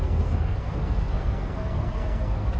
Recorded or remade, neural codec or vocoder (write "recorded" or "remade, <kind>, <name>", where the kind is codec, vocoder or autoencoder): remade, codec, SNAC